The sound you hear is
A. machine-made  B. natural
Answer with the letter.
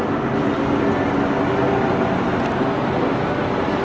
B